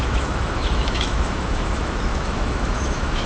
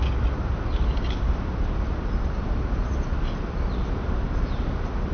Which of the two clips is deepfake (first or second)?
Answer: first